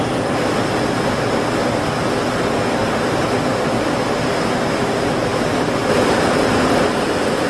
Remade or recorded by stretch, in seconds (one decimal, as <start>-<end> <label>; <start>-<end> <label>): 0.0-7.5 recorded